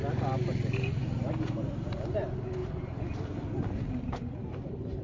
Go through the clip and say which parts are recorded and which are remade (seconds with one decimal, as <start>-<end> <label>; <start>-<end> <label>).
0.0-1.0 recorded; 1.0-2.0 remade; 2.0-2.6 recorded; 2.6-5.0 remade